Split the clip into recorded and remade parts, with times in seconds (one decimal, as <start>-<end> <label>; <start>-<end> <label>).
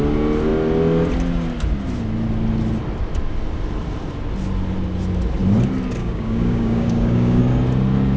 0.0-6.0 recorded; 6.0-7.4 remade; 7.4-8.2 recorded